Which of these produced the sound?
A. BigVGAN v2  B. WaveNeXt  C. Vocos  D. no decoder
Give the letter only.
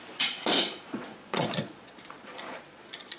C